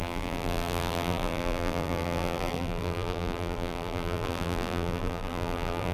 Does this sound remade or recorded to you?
remade